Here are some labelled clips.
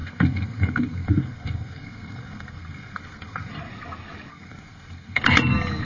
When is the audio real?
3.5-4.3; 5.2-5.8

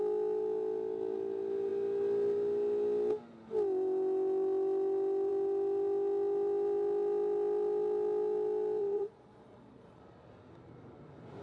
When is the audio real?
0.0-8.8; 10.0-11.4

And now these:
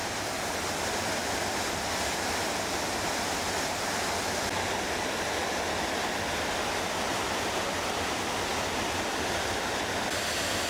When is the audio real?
0.0-10.7

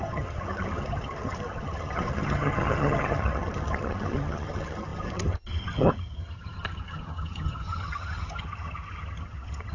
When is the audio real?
none

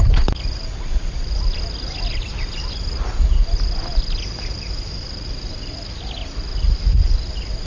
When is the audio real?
0.0-3.9; 5.6-7.7

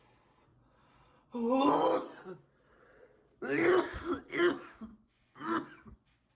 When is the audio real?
0.0-0.5; 1.7-4.9

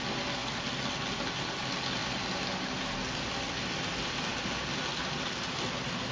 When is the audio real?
0.0-6.1

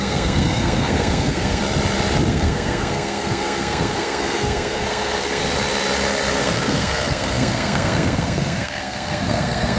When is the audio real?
1.6-2.3; 5.4-6.4